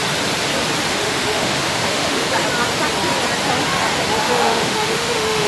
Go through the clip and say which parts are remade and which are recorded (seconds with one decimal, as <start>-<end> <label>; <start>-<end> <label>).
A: 0.0-0.9 recorded; 0.9-2.3 remade; 2.3-4.2 recorded; 4.2-5.5 remade

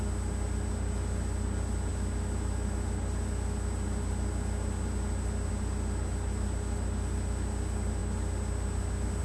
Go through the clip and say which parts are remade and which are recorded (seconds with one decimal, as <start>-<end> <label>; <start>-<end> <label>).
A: 0.0-9.2 recorded